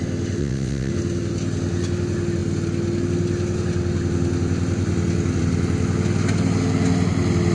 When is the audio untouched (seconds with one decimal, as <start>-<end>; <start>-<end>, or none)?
0.0-0.4; 0.9-7.5